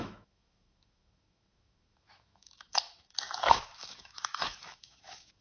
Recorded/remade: remade